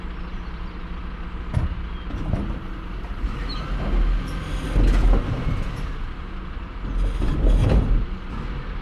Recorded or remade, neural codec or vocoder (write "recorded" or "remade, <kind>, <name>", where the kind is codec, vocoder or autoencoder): recorded